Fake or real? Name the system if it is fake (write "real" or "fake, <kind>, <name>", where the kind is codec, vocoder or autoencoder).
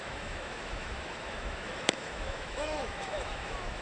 fake, autoencoder, DAC-VAE